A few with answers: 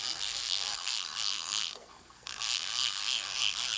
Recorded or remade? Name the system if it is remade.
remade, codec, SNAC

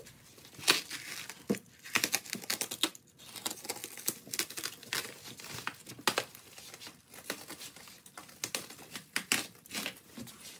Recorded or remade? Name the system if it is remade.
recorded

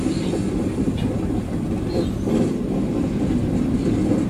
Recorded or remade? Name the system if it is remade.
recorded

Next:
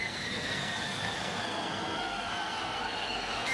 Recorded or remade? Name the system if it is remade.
remade, codec, SNAC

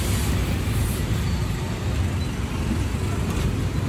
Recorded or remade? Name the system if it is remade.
recorded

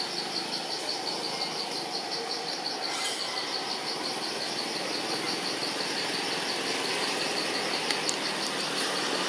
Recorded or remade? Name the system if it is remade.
recorded